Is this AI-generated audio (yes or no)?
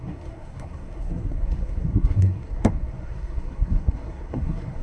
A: yes